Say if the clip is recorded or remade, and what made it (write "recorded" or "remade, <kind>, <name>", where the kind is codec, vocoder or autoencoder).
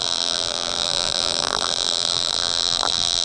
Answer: remade, vocoder, BigVGAN v2